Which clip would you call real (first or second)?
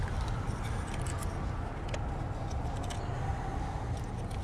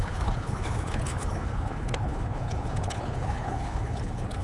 first